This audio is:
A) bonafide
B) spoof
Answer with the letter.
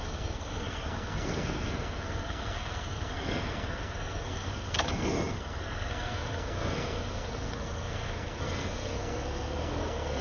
B